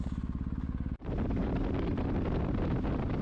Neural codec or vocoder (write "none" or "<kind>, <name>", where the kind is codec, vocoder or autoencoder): none